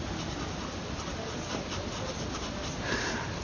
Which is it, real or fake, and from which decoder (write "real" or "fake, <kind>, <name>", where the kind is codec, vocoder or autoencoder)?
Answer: real